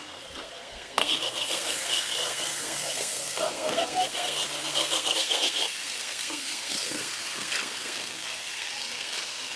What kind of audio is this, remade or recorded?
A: remade